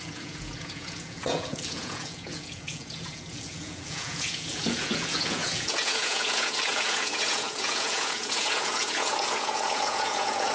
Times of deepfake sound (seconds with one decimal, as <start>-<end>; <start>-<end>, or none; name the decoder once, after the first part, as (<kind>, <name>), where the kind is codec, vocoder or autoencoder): 0.0-10.5 (vocoder, Vocos)